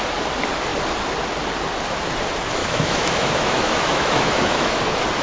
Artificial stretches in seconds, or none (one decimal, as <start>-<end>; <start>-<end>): 2.6-4.8